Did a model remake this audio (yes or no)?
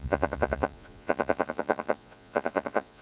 yes